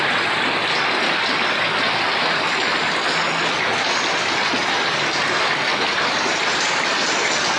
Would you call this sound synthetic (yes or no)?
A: no